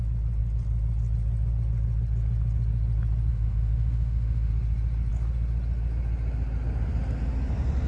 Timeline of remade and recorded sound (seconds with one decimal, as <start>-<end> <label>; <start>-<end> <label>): 0.0-3.3 recorded; 3.3-4.5 remade; 4.5-7.9 recorded